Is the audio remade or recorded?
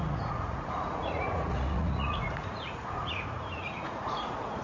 remade